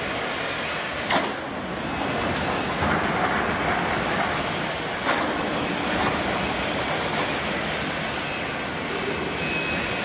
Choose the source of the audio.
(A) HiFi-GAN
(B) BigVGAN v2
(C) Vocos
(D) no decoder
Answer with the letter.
D